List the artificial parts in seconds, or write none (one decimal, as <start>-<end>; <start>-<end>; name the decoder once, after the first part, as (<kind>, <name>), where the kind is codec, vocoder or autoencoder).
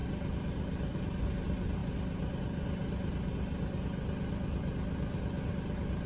none